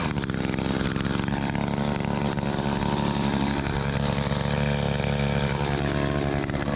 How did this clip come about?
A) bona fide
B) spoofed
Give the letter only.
A